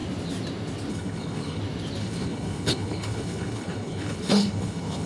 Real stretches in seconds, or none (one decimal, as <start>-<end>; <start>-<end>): 0.0-0.9; 1.6-2.0